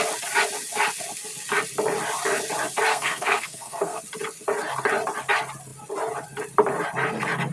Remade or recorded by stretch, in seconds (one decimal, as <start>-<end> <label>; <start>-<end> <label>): 0.0-2.9 recorded; 2.9-4.0 remade; 4.0-7.5 recorded